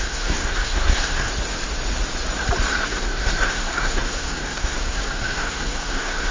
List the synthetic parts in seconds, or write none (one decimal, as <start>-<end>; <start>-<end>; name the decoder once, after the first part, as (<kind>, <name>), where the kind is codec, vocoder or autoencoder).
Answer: 0.0-1.3 (codec, SNAC); 2.7-6.3